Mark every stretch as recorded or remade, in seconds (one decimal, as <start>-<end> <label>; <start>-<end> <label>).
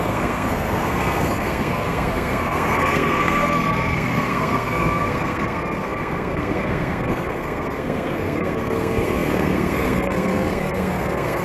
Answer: 0.0-11.4 remade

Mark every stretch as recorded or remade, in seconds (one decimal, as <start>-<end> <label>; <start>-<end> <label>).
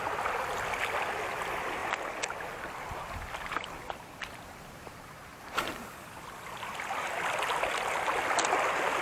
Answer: 0.0-1.8 recorded; 1.8-6.8 remade; 6.8-9.0 recorded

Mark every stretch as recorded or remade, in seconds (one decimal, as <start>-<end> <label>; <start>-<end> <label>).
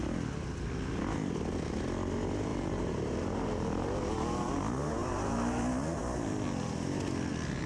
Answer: 0.0-2.5 recorded; 2.5-4.5 remade; 4.5-5.0 recorded; 5.0-5.6 remade; 5.6-7.7 recorded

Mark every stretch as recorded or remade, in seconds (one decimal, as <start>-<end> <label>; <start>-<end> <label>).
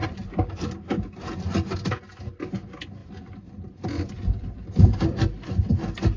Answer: 0.0-0.6 remade; 0.6-3.0 recorded; 3.0-5.2 remade; 5.2-6.2 recorded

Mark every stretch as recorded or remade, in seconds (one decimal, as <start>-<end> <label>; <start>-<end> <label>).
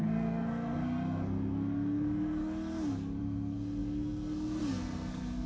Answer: 0.0-2.4 remade; 2.4-3.2 recorded; 3.2-5.5 remade